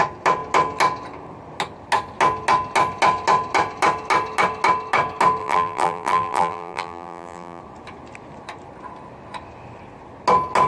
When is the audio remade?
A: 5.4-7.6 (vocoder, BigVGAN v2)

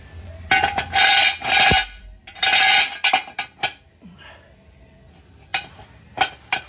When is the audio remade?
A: none

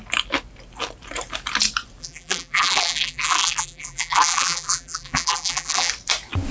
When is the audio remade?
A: 2.0-5.9 (vocoder, BigVGAN v2)

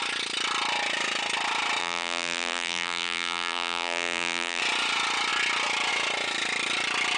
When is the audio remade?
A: 1.8-4.6 (vocoder, BigVGAN v2)

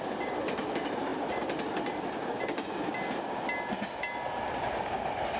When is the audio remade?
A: 0.0-1.1 (vocoder, BigVGAN v2); 4.3-5.4

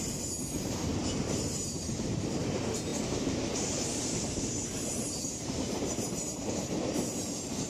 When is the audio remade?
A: 0.0-7.7 (vocoder, BigVGAN v2)

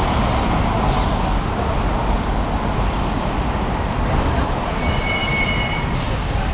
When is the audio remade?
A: 3.9-5.2 (vocoder, BigVGAN v2)

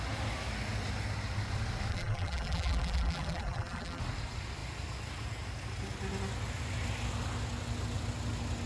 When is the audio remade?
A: 1.9-4.0 (vocoder, BigVGAN v2)